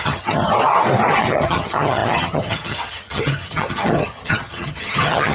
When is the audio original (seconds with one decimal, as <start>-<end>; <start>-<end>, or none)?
0.5-1.2